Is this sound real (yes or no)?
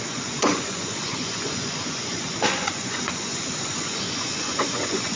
no